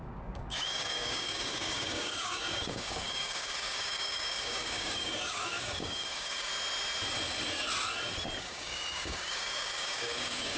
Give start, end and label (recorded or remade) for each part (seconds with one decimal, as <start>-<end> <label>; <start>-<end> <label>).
0.0-6.5 remade; 6.5-8.4 recorded; 8.4-10.6 remade